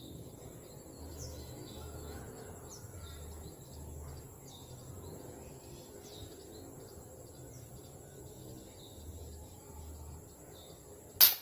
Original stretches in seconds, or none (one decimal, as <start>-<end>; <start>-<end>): 0.0-1.1; 2.2-11.4